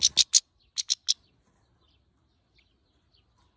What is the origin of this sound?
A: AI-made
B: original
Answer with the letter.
B